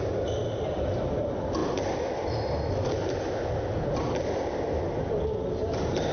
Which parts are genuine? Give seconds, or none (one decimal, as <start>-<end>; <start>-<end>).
0.0-6.1